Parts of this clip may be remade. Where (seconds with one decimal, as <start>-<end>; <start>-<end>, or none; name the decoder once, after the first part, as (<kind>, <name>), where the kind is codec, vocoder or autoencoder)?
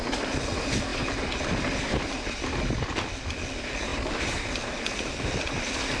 none